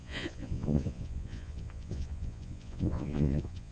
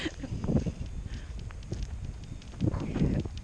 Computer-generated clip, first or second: first